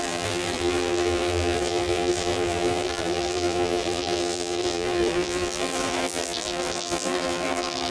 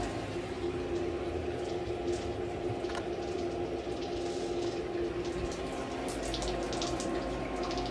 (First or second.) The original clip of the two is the second